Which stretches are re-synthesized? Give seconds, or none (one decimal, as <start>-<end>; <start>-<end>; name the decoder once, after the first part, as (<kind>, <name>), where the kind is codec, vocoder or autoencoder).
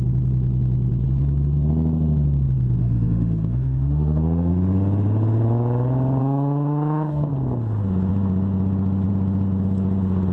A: 2.8-4.5 (autoencoder, DAC-VAE); 6.2-7.3